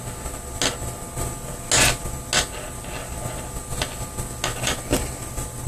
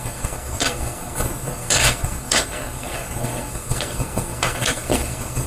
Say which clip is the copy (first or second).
second